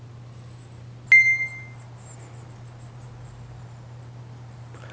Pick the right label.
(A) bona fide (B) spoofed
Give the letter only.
A